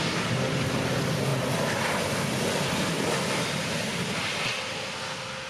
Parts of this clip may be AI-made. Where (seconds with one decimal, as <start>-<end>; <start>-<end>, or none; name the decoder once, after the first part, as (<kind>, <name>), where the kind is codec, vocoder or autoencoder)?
none